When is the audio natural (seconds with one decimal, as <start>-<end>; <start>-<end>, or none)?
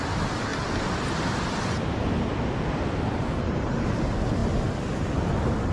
0.0-5.7